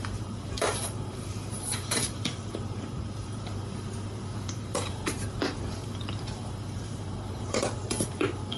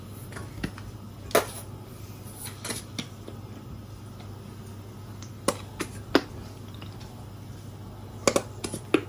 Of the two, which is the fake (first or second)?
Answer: first